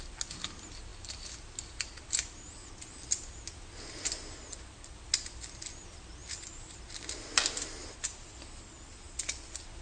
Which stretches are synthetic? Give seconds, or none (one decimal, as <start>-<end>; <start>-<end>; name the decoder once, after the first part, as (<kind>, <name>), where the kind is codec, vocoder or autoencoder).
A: none